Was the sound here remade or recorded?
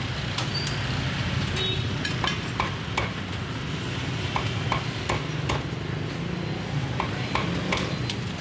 recorded